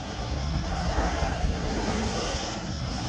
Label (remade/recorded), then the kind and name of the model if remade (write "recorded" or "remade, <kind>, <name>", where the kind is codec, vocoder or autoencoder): remade, codec, SNAC